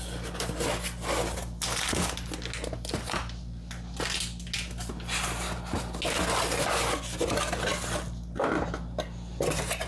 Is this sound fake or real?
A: real